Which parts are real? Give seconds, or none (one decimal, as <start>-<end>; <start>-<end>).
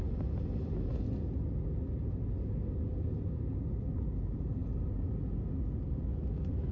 0.0-6.7